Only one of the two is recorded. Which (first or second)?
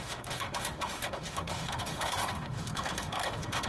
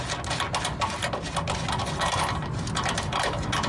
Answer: second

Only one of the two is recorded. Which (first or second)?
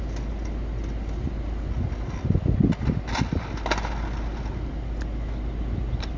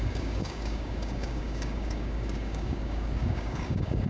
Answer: first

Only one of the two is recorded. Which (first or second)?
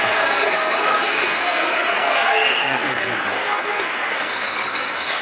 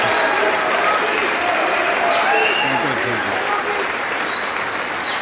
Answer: second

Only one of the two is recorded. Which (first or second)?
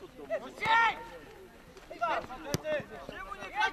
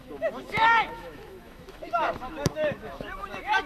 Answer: first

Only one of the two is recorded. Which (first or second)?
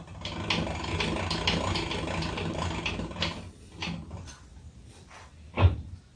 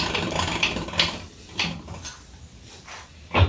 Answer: first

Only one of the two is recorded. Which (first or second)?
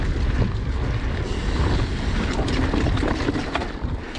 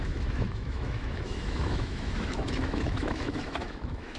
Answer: first